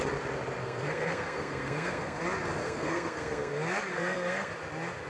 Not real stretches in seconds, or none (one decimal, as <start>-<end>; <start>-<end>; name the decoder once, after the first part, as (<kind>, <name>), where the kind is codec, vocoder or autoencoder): 0.6-2.2 (codec, SNAC); 2.6-3.5; 3.9-4.5